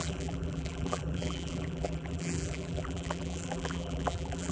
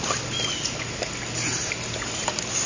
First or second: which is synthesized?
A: first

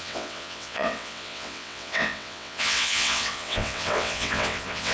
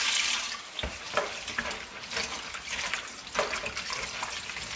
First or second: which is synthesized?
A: first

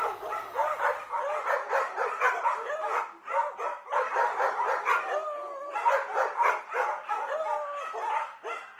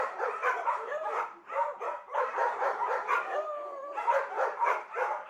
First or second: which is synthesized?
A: second